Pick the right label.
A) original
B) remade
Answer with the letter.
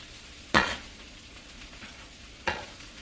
B